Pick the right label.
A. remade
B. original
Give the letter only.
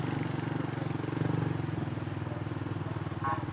B